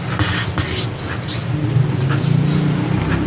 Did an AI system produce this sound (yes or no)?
no